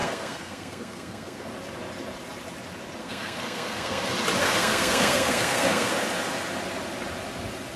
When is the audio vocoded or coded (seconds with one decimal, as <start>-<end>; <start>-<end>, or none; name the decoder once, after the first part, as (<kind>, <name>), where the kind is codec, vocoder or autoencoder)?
0.0-1.5 (codec, SNAC); 3.0-4.0; 4.4-5.9